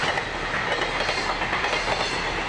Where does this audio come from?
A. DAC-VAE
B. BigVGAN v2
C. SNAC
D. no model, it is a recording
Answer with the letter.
D